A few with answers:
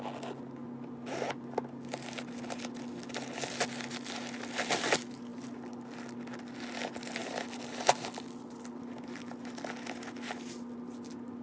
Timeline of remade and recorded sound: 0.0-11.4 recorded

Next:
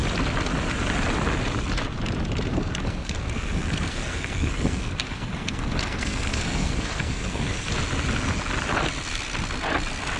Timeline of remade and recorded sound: 0.0-2.5 recorded; 2.5-7.7 remade; 7.7-10.2 recorded

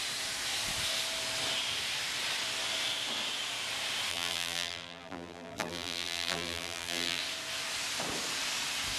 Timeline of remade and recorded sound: 0.0-4.1 recorded; 4.1-7.2 remade; 7.2-9.0 recorded

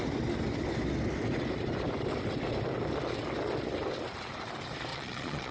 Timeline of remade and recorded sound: 0.0-4.9 recorded; 4.9-5.5 remade

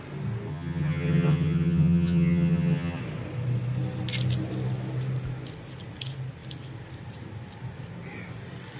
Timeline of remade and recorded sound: 0.0-0.5 recorded; 0.5-3.0 remade; 3.0-8.8 recorded